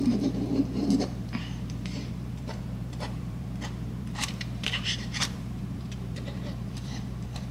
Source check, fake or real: fake